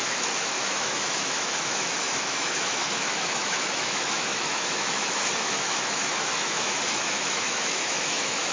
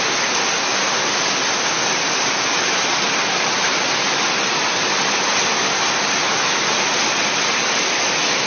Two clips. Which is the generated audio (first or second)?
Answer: first